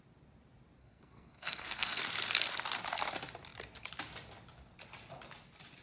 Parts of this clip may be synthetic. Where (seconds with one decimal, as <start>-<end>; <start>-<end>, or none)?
0.8-2.0

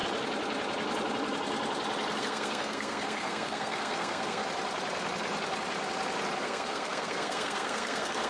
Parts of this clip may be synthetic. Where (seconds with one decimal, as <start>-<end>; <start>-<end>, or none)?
2.2-4.4; 6.4-8.3

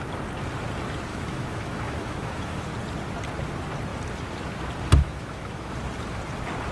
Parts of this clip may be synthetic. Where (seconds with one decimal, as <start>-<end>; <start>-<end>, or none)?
1.1-2.7; 5.0-5.7

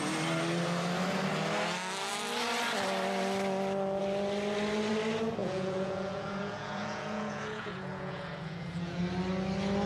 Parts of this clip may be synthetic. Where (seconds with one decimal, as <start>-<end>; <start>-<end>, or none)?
5.4-9.0

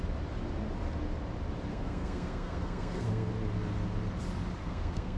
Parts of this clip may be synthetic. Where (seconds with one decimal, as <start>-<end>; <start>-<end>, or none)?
1.7-3.3; 4.6-5.2